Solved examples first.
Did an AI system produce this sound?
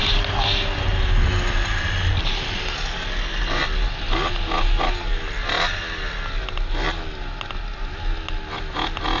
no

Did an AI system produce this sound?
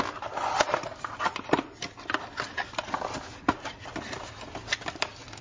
no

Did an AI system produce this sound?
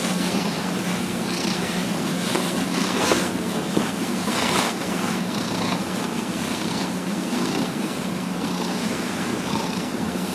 yes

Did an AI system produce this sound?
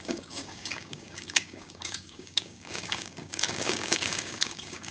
yes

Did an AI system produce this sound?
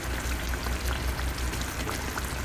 no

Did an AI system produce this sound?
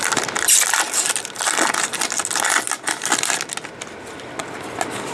no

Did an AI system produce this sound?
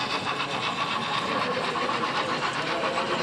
no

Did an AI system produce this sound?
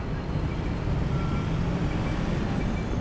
no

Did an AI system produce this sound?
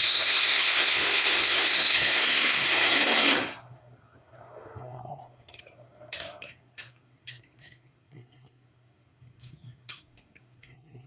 yes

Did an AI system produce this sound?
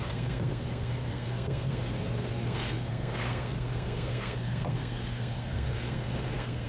yes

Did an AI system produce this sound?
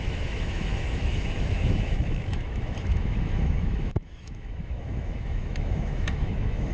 yes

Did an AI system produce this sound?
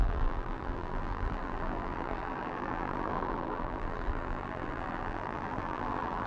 yes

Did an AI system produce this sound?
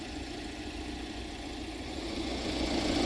yes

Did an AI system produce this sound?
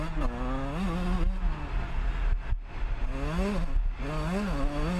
no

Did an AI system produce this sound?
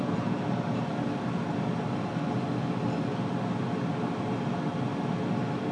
no